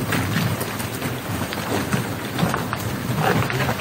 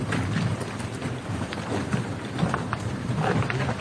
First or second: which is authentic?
first